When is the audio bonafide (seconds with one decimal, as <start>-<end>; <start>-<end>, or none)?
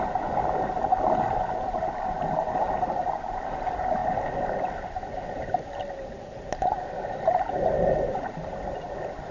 0.0-9.3